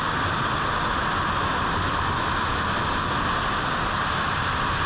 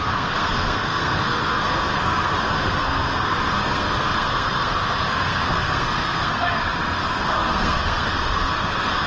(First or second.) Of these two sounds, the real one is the first